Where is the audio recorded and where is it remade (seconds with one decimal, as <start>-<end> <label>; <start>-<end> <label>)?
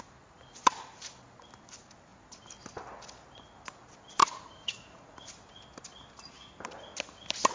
0.0-4.2 recorded; 4.2-5.3 remade; 5.3-7.5 recorded